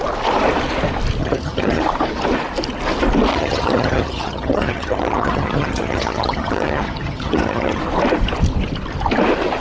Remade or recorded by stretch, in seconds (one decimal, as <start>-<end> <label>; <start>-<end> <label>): 0.0-1.2 recorded; 1.2-1.8 remade; 1.8-3.3 recorded; 3.3-7.8 remade; 7.8-9.6 recorded